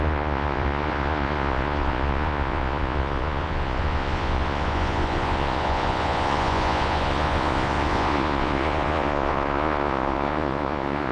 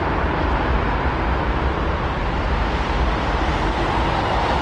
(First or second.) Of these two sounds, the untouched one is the second